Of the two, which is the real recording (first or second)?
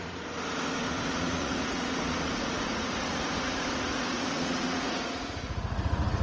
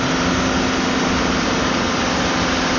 second